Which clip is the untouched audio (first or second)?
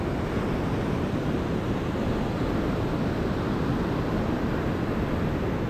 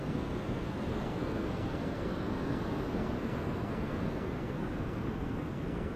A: first